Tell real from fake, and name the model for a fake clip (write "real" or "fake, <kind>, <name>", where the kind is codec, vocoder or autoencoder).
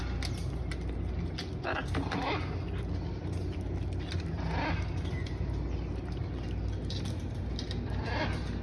real